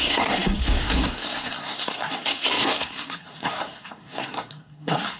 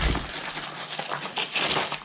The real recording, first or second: second